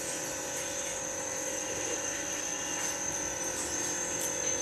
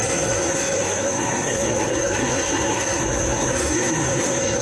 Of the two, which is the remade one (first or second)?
second